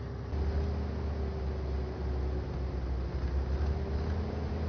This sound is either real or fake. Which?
real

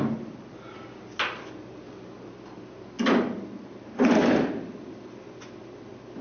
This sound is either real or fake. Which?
real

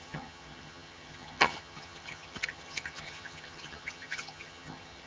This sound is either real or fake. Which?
fake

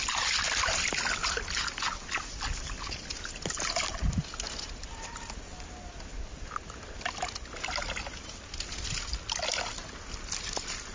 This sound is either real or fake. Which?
real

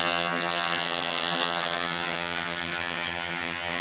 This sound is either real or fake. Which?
fake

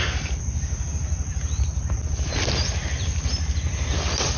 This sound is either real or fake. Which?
real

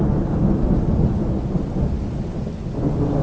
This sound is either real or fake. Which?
real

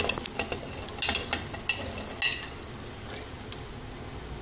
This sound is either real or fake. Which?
real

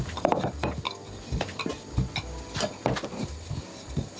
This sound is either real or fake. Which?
real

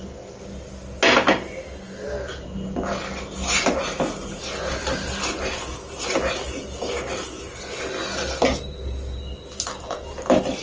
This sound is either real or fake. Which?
real